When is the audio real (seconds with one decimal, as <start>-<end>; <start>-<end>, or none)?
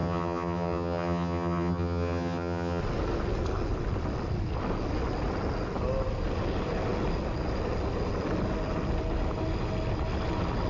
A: 2.8-10.7